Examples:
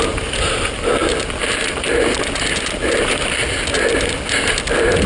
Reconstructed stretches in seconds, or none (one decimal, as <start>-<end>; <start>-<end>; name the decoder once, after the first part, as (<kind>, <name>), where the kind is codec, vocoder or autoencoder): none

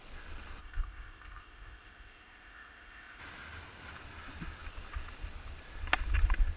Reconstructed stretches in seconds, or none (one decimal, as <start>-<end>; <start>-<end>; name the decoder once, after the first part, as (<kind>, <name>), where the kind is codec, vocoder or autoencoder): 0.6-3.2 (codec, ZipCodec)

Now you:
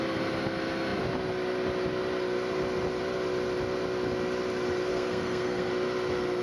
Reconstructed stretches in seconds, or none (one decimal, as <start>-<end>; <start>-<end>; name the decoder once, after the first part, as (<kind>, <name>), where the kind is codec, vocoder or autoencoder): 4.9-5.7 (codec, SNAC)